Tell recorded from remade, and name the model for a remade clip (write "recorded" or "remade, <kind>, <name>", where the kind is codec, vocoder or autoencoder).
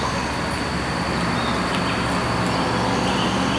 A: recorded